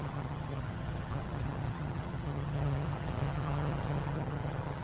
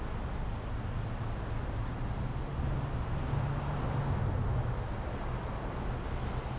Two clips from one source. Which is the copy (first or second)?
first